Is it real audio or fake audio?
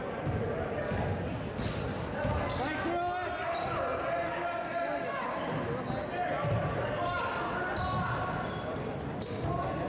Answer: real